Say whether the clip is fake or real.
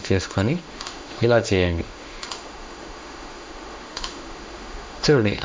fake